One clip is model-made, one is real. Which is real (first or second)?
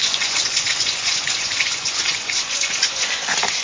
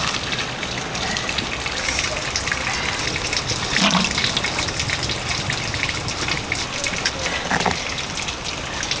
second